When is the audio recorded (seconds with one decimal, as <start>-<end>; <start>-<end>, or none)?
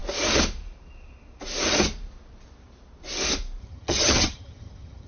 0.0-3.6